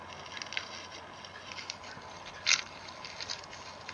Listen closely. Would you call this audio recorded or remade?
recorded